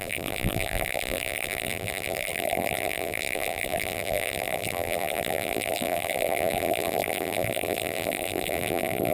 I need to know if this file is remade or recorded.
remade